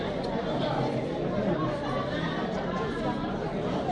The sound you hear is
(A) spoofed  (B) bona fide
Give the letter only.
B